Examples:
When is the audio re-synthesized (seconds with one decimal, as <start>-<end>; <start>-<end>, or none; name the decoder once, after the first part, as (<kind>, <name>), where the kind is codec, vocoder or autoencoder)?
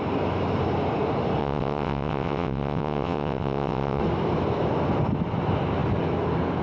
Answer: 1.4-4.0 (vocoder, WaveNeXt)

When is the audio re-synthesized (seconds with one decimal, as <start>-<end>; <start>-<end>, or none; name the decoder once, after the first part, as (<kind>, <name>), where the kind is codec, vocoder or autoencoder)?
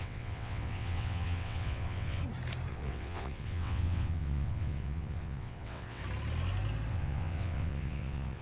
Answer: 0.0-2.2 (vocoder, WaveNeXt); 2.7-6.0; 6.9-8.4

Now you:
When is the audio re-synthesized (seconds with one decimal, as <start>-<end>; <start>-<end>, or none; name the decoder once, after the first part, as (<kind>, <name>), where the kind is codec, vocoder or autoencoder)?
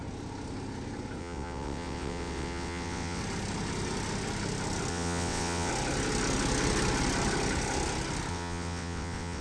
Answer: 1.2-3.2 (vocoder, WaveNeXt); 4.9-5.7; 8.3-9.4